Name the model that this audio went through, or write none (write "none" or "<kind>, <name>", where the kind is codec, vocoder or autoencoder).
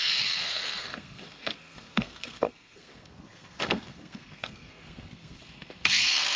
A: codec, SNAC